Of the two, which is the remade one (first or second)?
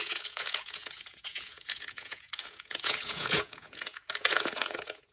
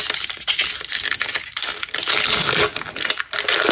first